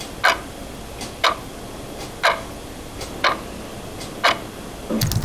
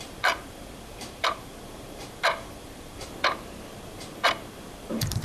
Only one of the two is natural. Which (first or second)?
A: first